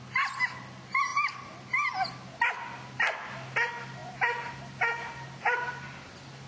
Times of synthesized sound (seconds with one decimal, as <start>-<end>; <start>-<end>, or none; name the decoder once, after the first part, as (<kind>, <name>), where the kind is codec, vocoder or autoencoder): none